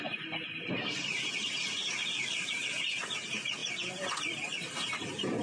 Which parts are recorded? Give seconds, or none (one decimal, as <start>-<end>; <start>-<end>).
0.0-5.4